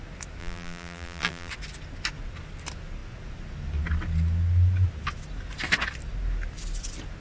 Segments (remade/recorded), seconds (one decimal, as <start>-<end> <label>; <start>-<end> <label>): 0.0-0.4 recorded; 0.4-1.5 remade; 1.5-7.2 recorded